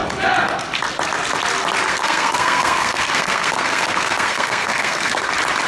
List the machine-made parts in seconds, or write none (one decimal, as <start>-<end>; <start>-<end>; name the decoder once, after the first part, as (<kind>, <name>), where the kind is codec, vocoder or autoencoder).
1.9-5.3 (codec, SNAC)